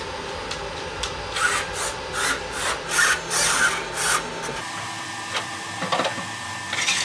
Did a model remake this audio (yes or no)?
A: no